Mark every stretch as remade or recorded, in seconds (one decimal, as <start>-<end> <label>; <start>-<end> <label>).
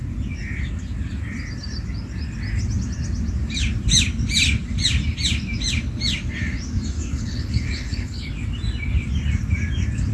0.0-7.1 recorded; 7.1-8.3 remade; 8.3-10.1 recorded